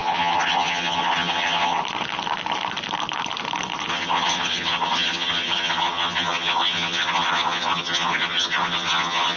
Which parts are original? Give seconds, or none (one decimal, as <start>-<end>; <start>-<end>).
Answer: 1.8-3.9